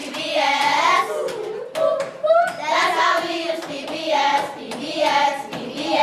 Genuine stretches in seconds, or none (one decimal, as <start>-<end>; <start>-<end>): 1.0-1.9; 5.5-6.0